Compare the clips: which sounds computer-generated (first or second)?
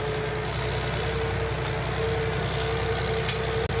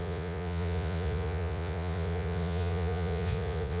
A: second